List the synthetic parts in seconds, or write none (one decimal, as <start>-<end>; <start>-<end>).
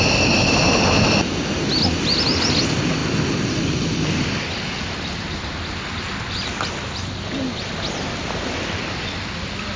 none